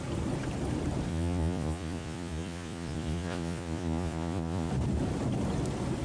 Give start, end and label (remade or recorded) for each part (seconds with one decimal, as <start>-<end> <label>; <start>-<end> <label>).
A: 0.0-1.1 recorded; 1.1-4.7 remade; 4.7-6.0 recorded